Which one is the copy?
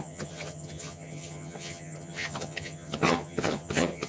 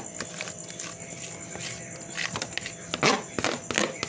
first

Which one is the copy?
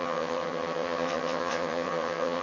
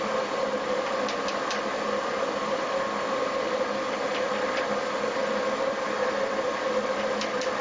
first